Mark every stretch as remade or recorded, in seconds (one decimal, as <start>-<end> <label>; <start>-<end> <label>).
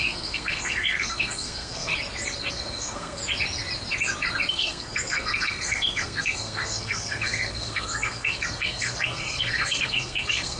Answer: 0.0-1.9 remade; 1.9-2.5 recorded; 2.5-3.2 remade; 3.2-4.5 recorded; 4.5-10.6 remade